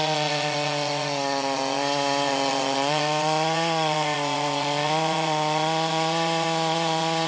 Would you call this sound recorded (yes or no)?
no